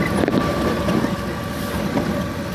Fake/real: real